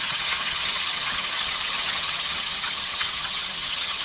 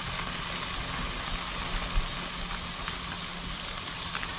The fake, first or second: first